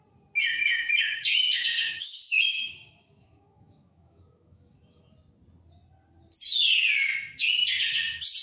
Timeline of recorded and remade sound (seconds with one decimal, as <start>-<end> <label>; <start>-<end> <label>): 0.0-0.6 recorded; 0.6-5.1 remade; 5.1-8.4 recorded